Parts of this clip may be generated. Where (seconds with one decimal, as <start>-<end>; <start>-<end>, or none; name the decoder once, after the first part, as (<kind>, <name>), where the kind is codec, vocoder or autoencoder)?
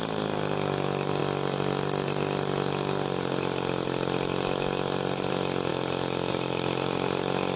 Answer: none